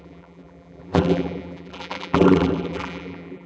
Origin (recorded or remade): remade